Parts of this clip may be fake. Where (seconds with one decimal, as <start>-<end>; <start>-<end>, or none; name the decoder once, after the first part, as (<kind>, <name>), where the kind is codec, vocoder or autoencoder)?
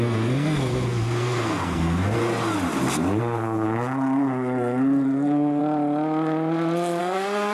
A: 0.0-2.2 (codec, SNAC); 3.2-5.6; 7.0-7.5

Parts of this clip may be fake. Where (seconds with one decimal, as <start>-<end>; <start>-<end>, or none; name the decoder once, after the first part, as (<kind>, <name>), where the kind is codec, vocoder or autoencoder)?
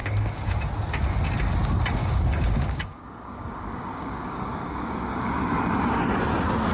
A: 0.0-0.6 (codec, DAC); 2.0-6.0